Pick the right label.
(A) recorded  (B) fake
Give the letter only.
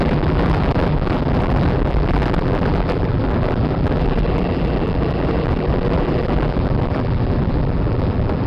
B